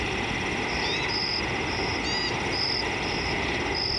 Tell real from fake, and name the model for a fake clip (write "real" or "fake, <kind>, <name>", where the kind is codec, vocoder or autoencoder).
real